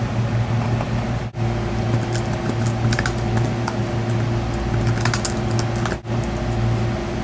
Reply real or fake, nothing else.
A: real